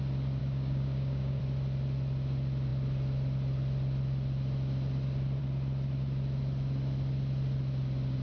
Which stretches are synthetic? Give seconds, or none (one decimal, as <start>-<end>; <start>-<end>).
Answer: 0.4-1.4